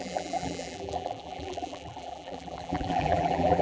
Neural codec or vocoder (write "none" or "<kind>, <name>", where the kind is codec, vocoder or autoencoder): vocoder, BigVGAN v2